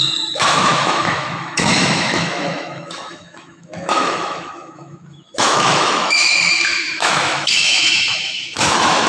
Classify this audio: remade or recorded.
remade